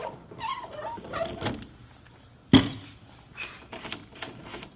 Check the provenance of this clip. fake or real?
real